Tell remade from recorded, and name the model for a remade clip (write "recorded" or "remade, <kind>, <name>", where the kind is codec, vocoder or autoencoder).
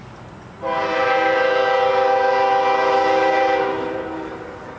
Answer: recorded